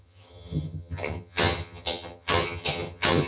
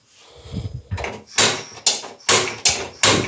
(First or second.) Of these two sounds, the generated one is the first